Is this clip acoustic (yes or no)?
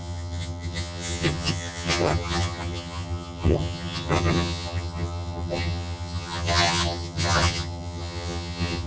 no